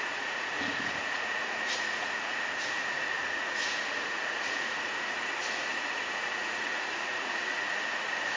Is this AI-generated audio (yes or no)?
yes